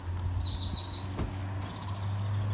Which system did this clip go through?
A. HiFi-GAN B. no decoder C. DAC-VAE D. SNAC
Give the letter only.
B